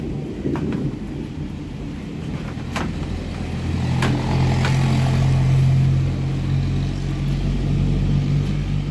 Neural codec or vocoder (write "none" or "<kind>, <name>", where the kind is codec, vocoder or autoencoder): none